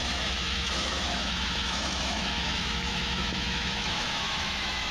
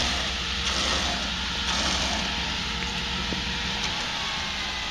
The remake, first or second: first